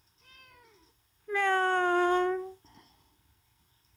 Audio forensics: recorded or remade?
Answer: remade